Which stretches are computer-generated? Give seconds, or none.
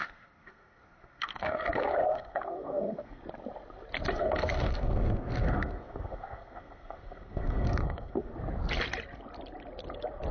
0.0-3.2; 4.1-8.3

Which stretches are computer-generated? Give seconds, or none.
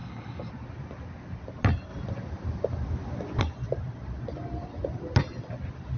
0.0-0.5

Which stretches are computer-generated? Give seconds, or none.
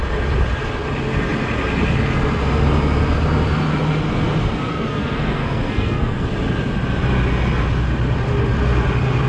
4.7-6.3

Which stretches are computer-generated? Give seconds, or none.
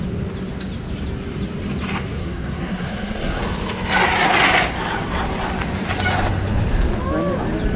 2.2-3.4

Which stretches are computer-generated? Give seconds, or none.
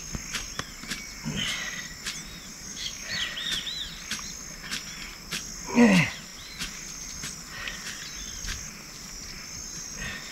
2.5-3.1